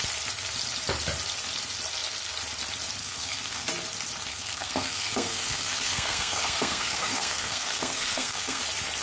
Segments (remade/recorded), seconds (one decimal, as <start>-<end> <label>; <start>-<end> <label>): 0.0-3.0 recorded; 3.0-3.7 remade; 3.7-4.3 recorded; 4.3-8.6 remade; 8.6-9.0 recorded